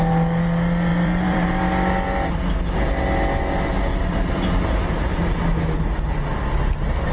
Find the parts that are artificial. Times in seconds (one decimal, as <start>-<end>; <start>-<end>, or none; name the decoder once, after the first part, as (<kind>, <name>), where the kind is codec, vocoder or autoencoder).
0.9-1.5 (vocoder, BigVGAN v2); 3.9-5.2

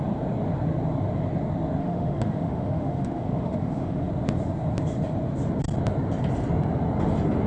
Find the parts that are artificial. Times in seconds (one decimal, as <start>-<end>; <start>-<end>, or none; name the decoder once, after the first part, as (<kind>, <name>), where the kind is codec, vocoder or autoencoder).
1.8-4.1 (autoencoder, DAC-VAE)

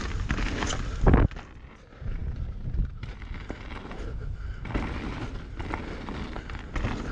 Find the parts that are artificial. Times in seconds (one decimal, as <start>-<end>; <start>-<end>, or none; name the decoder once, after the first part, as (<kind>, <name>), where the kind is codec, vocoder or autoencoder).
none

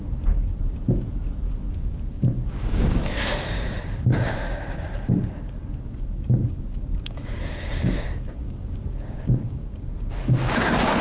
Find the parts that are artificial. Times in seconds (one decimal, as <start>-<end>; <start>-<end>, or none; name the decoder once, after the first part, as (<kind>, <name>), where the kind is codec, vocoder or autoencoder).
0.0-0.5 (codec, DAC); 1.7-11.0

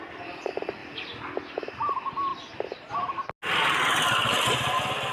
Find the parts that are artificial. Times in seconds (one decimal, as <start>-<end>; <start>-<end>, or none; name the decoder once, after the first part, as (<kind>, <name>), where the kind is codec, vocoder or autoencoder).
none

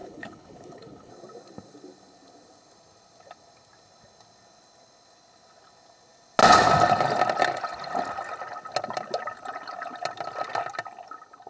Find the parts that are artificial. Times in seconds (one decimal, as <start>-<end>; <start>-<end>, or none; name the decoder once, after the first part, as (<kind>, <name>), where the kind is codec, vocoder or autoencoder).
0.0-1.1 (codec, HILCodec)